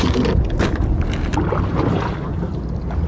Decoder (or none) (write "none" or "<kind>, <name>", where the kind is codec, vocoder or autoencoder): none